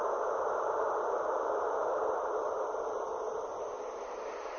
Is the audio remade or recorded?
recorded